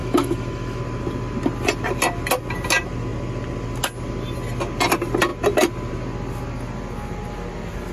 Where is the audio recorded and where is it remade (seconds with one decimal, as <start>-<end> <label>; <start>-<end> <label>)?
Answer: 0.0-0.8 remade; 0.8-7.9 recorded